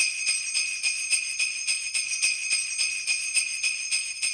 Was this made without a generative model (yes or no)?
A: yes